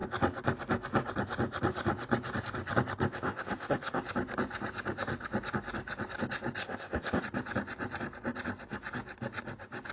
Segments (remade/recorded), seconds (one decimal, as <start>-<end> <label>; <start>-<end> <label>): 0.0-3.1 recorded; 3.1-4.0 remade; 4.0-6.6 recorded; 6.6-7.2 remade; 7.2-9.9 recorded